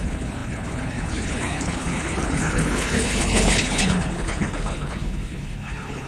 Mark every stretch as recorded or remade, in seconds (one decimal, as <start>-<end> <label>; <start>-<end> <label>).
0.0-6.1 remade